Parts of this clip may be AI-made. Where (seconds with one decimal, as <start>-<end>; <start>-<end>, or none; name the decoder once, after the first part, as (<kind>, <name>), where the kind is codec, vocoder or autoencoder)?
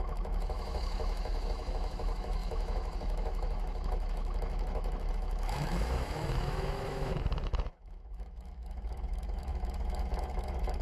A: 0.0-10.8 (autoencoder, DAC-VAE)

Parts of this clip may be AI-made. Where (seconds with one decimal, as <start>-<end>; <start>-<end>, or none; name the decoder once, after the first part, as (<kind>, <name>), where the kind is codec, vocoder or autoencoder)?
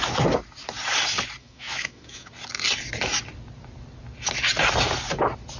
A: 1.4-2.3 (autoencoder, DAC-VAE)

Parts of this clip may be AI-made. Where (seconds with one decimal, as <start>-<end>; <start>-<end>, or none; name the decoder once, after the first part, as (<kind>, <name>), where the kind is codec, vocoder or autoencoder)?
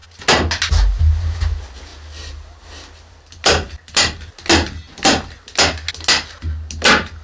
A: none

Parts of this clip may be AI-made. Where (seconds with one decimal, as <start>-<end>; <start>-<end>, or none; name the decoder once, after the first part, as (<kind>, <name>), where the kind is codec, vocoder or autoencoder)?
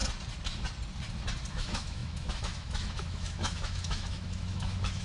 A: 1.5-5.0 (autoencoder, DAC-VAE)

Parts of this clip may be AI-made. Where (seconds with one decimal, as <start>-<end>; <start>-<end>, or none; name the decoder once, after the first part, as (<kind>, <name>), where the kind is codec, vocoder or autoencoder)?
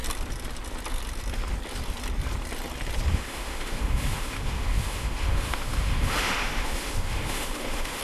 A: 3.1-8.0 (autoencoder, DAC-VAE)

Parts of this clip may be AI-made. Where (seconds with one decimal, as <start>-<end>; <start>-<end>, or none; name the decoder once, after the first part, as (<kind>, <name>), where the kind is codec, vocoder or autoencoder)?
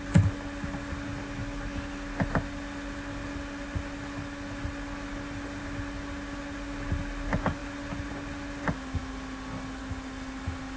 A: none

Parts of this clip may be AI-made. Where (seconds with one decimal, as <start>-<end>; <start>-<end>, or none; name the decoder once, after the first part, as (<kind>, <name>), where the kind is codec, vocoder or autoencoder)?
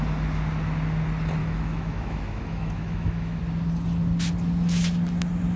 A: 1.4-3.4 (autoencoder, DAC-VAE)